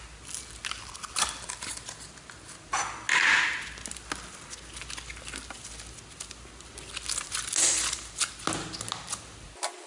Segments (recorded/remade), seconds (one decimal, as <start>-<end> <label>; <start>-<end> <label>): 0.0-9.9 recorded